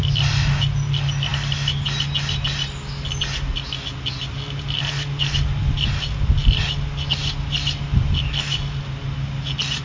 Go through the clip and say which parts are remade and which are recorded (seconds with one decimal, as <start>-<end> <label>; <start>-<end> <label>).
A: 0.0-9.8 recorded